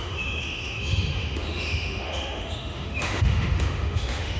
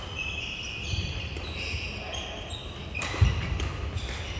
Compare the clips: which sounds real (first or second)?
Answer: second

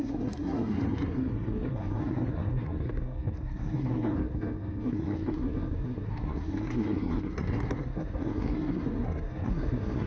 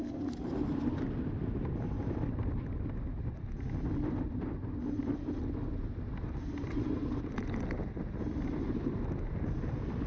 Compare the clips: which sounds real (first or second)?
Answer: second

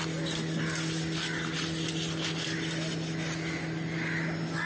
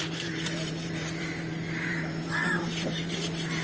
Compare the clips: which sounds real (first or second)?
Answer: first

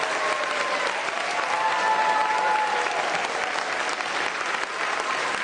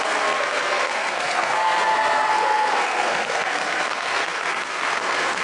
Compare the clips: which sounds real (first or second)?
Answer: first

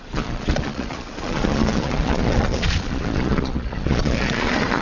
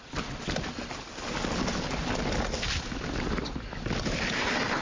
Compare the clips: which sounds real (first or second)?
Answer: second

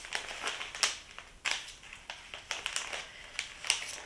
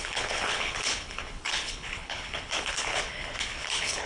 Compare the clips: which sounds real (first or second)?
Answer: first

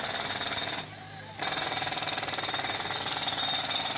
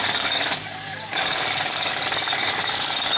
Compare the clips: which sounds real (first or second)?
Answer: first